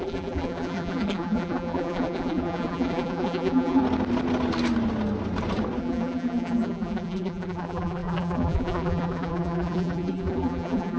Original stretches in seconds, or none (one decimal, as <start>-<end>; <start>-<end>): 3.8-5.8